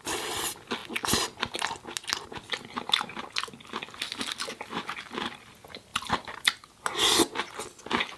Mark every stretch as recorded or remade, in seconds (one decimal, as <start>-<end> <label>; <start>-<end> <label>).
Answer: 0.0-8.2 recorded